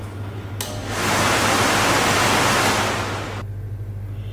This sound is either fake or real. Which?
real